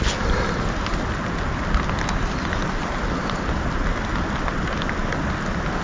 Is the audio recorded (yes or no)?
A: yes